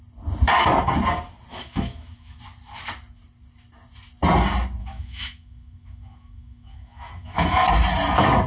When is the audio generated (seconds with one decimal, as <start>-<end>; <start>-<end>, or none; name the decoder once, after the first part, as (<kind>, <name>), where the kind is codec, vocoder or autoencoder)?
1.5-2.4 (autoencoder, DAC-VAE); 4.8-7.7